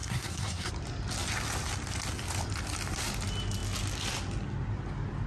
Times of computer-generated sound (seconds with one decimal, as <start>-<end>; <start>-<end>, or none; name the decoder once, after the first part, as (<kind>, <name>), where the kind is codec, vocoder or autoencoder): 0.0-0.7 (codec, SNAC)